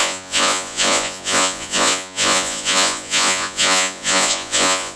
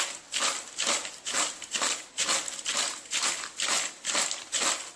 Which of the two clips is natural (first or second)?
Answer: second